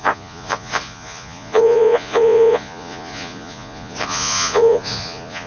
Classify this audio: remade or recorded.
remade